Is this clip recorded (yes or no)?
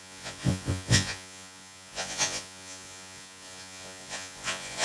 no